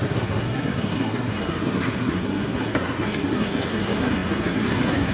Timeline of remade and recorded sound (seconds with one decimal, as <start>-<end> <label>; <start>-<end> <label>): 0.0-5.1 remade